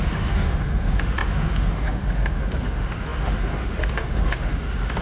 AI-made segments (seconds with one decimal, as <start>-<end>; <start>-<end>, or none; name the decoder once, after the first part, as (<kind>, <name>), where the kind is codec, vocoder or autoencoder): 0.0-5.0 (autoencoder, DAC-VAE)